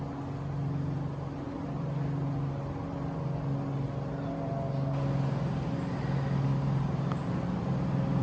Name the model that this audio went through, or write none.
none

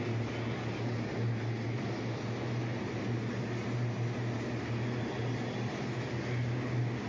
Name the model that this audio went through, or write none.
none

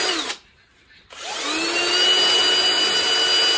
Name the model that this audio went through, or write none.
none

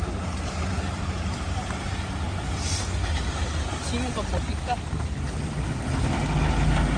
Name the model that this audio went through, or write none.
none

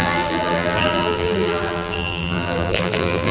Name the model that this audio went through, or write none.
vocoder, BigVGAN v2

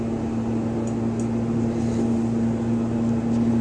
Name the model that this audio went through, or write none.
none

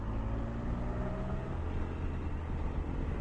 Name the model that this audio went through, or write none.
none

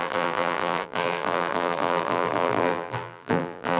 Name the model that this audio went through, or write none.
vocoder, BigVGAN v2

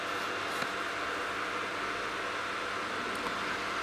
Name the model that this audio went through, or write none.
none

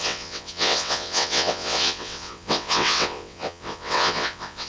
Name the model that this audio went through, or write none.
vocoder, WaveNeXt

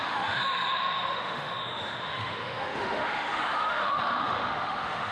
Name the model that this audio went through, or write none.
autoencoder, DAC-VAE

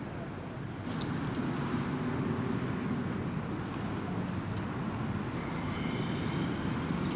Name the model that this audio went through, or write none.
none